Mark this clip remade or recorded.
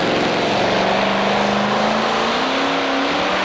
recorded